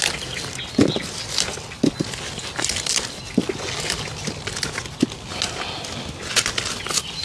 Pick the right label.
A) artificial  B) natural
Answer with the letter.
B